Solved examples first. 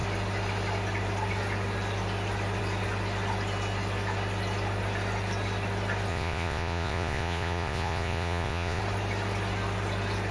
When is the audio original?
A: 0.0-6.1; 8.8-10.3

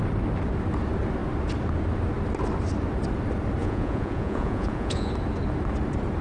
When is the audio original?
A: 0.0-3.6; 5.1-6.2

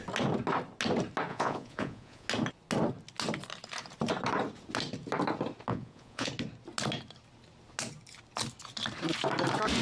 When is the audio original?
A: 0.0-1.3; 2.3-5.7; 6.3-9.8